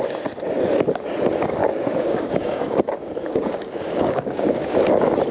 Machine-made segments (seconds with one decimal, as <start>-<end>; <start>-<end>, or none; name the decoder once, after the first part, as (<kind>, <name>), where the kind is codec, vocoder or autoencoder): 1.6-4.8 (codec, DAC)